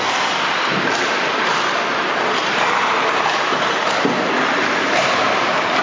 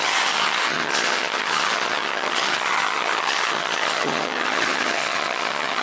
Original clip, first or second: first